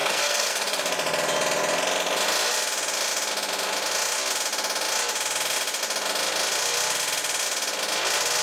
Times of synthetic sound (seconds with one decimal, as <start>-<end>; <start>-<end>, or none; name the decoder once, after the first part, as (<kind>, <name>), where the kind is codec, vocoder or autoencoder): 0.0-0.9 (codec, SNAC)